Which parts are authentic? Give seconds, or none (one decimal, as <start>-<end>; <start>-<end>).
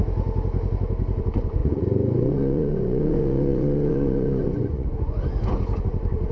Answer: 0.0-1.2